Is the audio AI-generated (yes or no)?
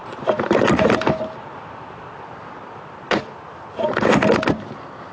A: no